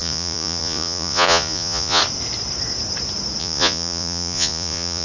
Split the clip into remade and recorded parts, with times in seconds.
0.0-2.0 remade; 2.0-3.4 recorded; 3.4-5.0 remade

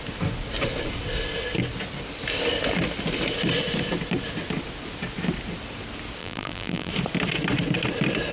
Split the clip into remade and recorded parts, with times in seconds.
0.0-6.2 recorded; 6.2-6.9 remade; 6.9-8.3 recorded